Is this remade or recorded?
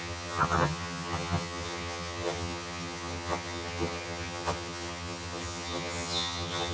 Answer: remade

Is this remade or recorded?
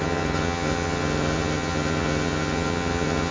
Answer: remade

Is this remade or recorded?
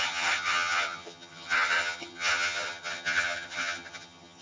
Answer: remade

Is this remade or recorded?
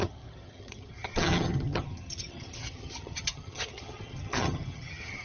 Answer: remade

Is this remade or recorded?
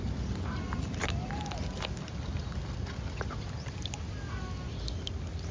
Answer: recorded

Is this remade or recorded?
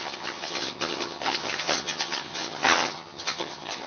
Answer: remade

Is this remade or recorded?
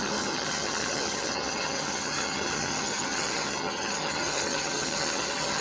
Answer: remade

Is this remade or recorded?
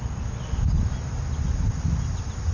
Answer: recorded